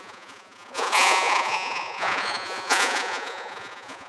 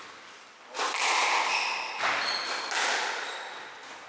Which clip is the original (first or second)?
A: second